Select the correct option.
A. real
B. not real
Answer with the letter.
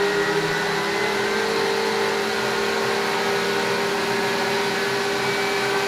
A